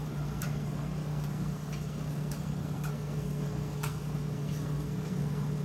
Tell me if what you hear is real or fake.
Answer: fake